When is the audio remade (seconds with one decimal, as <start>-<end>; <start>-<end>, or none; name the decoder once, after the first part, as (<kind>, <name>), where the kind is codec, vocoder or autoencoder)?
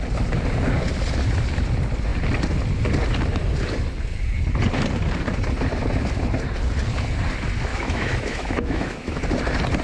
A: 7.7-9.2 (autoencoder, DAC-VAE)